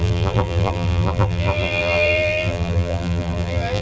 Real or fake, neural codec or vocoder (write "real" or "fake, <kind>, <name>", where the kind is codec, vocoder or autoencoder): fake, vocoder, BigVGAN v2